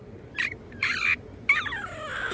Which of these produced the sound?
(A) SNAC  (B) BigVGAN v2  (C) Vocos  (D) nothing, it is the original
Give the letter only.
D